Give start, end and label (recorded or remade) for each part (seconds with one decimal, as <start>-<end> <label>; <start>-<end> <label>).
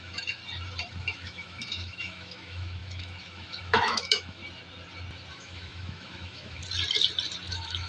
0.0-0.4 remade; 0.4-1.0 recorded; 1.0-4.4 remade; 4.4-5.3 recorded; 5.3-6.6 remade; 6.6-7.5 recorded; 7.5-7.9 remade